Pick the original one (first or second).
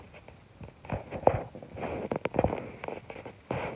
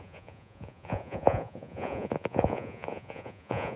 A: first